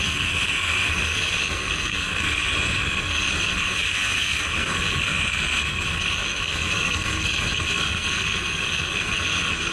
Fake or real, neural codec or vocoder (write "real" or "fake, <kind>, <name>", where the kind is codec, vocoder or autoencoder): fake, codec, SNAC